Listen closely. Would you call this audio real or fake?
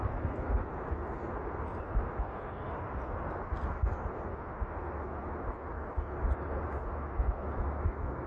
real